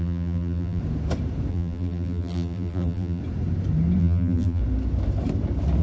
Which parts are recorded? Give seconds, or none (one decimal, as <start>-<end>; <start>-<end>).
0.8-1.5; 3.2-4.0; 4.6-5.8